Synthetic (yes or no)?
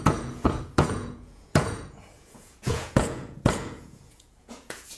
yes